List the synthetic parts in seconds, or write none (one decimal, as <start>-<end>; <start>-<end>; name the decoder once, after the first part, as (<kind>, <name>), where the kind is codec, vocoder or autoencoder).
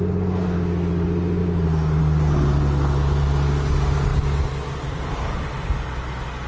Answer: none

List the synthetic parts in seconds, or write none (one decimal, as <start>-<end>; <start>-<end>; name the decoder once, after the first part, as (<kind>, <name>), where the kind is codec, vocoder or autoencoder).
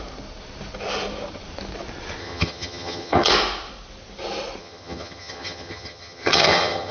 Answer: 2.2-3.3 (vocoder, HiFi-GAN); 4.6-6.9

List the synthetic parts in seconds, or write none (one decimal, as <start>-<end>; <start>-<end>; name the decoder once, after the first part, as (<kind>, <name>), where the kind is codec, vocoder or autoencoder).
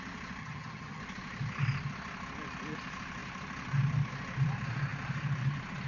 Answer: 0.4-1.0 (vocoder, HiFi-GAN)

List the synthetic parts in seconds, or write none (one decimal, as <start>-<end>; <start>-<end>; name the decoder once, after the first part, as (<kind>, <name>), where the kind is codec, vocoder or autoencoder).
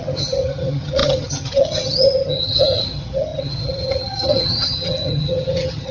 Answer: 0.0-5.9 (vocoder, HiFi-GAN)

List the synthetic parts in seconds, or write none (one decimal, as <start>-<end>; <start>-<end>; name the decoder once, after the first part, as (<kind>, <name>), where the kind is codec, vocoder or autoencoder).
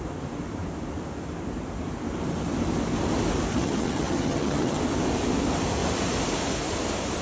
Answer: 3.5-4.8 (vocoder, HiFi-GAN)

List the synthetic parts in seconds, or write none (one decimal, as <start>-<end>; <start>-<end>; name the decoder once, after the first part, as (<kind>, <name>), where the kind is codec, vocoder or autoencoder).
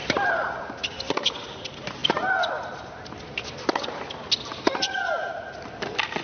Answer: none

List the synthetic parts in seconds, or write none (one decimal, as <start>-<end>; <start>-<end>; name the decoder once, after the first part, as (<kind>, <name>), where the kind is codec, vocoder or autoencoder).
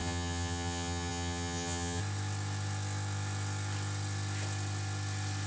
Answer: 0.0-2.0 (vocoder, HiFi-GAN)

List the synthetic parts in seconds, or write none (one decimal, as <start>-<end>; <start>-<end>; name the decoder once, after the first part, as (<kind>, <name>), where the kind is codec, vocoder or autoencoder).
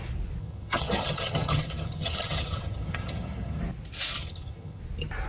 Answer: 0.4-3.6 (vocoder, HiFi-GAN); 4.2-4.8